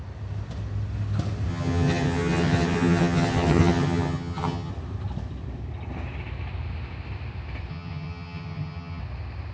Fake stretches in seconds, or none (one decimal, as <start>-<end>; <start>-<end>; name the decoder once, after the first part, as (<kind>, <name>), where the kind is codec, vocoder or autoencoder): 1.5-4.7 (vocoder, HiFi-GAN); 7.7-9.0